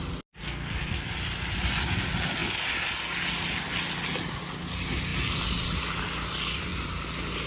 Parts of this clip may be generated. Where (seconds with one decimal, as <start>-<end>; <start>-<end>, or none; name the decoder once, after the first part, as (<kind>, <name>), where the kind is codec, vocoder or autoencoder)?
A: 0.4-1.1 (codec, SNAC)